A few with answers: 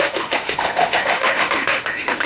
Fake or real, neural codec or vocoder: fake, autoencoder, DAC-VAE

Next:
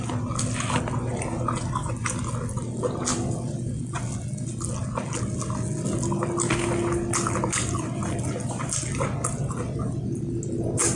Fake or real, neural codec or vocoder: real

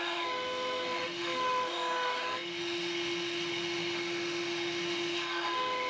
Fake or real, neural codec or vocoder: fake, autoencoder, DAC-VAE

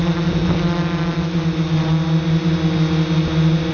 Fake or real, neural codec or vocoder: real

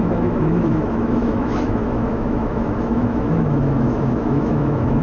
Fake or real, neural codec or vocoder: fake, autoencoder, DAC-VAE